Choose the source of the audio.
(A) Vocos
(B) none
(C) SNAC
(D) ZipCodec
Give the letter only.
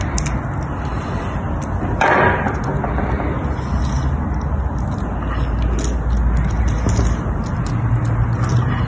B